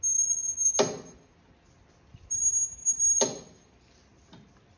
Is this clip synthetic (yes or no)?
no